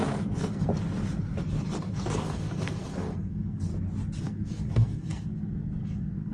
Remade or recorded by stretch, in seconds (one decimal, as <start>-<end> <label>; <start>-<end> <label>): 0.0-0.7 remade; 0.7-1.6 recorded; 1.6-3.7 remade; 3.7-4.2 recorded; 4.2-6.3 remade